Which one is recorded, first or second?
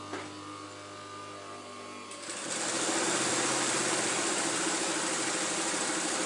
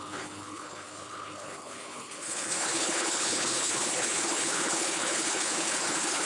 first